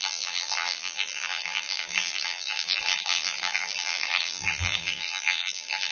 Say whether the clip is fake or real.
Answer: fake